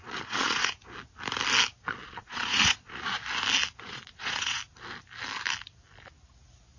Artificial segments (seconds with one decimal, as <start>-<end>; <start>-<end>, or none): 0.0-0.8; 1.9-3.2; 3.8-4.6